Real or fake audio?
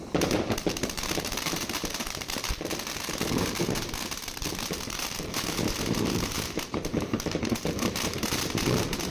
fake